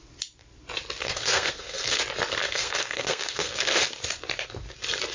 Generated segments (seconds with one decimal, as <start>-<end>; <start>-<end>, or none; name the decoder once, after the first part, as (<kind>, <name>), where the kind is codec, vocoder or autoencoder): 1.0-2.0 (codec, SNAC); 2.4-3.7